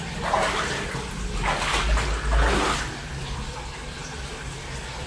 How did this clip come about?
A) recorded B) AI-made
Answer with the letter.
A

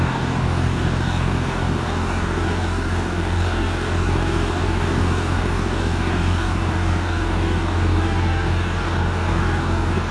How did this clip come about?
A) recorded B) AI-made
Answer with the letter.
B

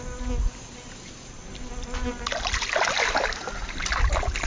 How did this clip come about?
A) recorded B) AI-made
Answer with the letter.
A